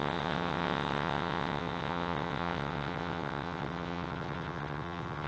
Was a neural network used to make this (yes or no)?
yes